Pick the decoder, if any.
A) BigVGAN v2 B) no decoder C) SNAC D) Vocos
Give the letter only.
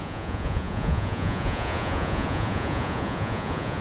D